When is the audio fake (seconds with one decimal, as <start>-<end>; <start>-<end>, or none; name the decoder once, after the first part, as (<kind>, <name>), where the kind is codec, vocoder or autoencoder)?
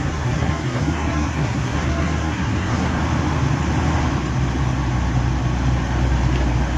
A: 0.0-3.0 (codec, SNAC)